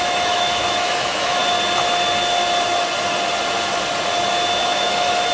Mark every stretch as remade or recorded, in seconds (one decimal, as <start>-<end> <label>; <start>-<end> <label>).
0.0-1.4 remade; 1.4-4.6 recorded; 4.6-5.3 remade